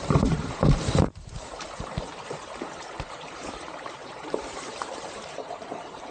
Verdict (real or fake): fake